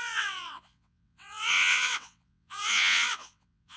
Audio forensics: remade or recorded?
remade